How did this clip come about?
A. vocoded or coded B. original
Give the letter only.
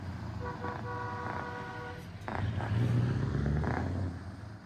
B